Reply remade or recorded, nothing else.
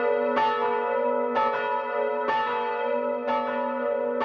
recorded